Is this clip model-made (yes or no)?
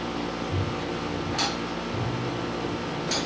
no